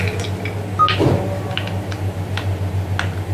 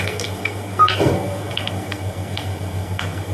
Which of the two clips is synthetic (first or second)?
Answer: second